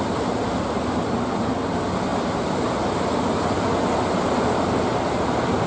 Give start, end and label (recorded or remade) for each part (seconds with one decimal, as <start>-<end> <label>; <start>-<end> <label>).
0.0-5.7 recorded